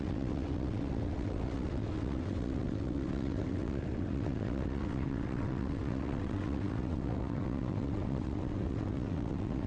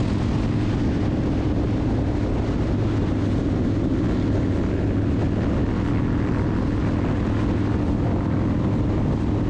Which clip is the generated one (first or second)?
first